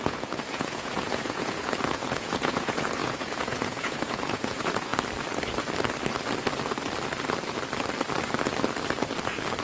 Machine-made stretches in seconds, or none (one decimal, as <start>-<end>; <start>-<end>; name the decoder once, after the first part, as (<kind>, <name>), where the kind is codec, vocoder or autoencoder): 0.0-4.9 (vocoder, Vocos)